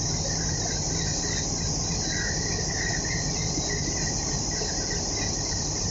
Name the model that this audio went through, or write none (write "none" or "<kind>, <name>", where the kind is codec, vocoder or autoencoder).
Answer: none